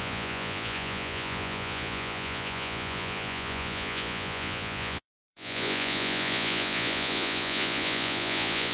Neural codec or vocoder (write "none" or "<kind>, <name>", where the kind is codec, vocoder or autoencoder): vocoder, Vocos